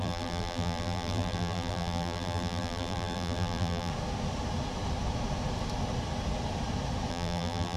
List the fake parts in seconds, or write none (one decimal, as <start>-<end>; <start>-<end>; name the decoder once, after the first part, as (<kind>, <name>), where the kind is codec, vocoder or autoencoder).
0.0-3.9 (vocoder, BigVGAN v2); 7.1-7.8